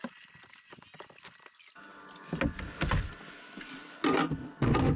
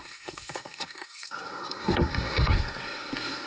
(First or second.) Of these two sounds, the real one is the first